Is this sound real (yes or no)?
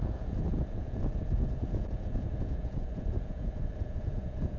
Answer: no